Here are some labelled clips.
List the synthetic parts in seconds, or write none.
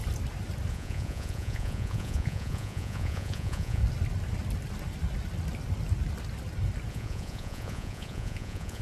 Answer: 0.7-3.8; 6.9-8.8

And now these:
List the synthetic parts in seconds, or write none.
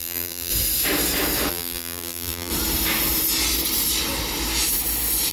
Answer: 0.0-0.5; 1.5-2.5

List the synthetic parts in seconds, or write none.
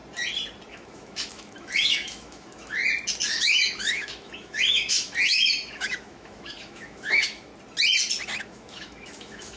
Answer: 0.7-2.8; 3.4-7.5; 8.4-9.6